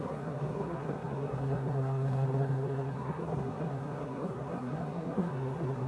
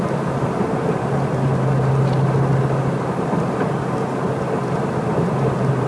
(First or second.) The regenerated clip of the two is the first